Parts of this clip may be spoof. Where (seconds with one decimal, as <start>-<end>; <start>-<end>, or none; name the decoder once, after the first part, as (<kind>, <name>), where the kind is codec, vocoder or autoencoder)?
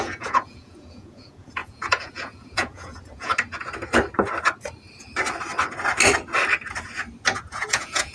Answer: 0.0-3.3 (vocoder, Vocos); 7.3-8.1